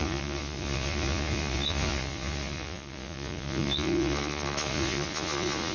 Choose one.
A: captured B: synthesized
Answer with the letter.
B